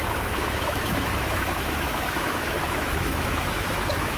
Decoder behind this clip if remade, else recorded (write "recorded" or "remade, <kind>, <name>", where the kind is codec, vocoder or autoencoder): remade, autoencoder, DAC-VAE